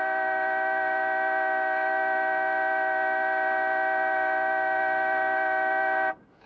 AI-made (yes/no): yes